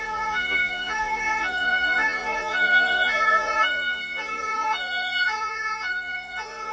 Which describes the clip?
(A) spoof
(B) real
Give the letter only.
A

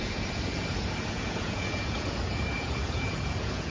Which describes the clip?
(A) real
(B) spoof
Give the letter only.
B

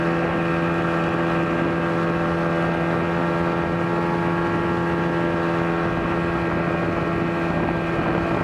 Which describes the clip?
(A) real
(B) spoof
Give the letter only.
A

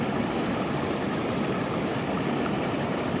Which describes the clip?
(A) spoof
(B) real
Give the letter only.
B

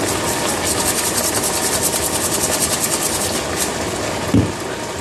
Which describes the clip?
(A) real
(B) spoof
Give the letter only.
A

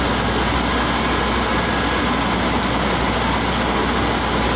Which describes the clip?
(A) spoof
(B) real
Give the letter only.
B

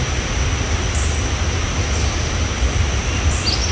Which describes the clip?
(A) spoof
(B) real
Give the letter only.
B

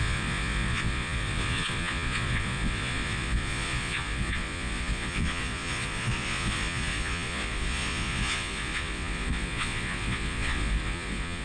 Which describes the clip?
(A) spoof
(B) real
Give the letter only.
A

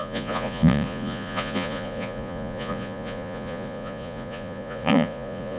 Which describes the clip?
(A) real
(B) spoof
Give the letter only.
B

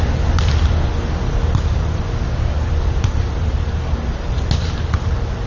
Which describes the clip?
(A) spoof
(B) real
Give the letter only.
B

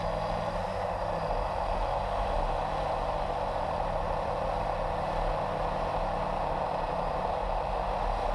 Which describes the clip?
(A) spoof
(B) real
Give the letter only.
B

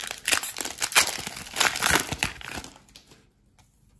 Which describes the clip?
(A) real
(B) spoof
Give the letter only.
A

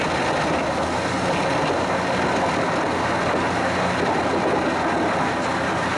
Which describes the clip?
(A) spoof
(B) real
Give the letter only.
B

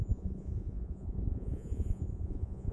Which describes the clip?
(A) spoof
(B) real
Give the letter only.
A